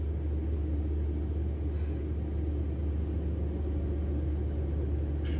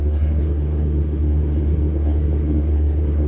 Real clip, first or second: first